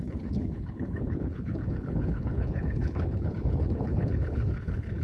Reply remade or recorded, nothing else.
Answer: remade